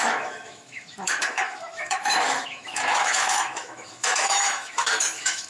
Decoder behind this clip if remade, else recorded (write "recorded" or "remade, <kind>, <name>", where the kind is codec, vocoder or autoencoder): remade, autoencoder, DAC-VAE